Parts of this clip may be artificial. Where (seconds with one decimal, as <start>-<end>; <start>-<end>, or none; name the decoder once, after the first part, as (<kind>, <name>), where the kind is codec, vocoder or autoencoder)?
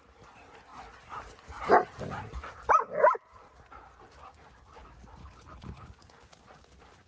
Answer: 5.2-5.9 (codec, HILCodec)